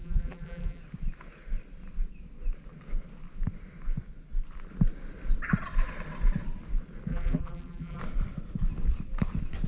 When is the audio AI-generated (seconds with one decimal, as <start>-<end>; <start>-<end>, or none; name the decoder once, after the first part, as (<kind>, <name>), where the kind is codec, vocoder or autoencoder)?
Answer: 0.0-0.8 (vocoder, BigVGAN v2); 7.1-8.0